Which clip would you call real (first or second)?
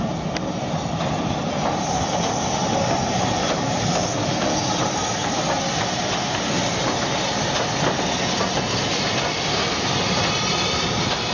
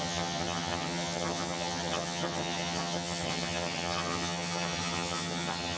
first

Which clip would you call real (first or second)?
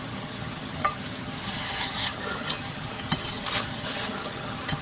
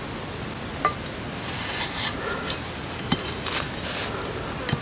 second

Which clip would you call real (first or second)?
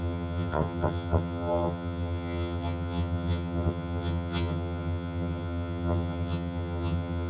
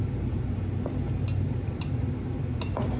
second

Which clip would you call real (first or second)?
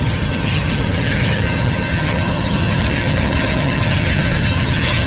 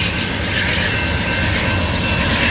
second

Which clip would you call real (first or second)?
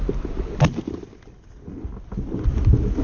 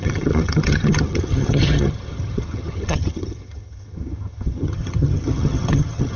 first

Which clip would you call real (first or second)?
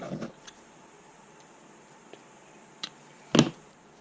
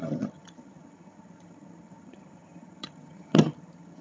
first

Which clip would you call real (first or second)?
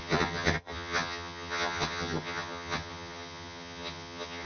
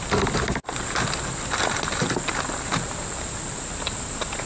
second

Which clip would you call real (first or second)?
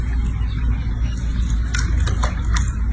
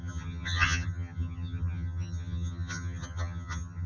first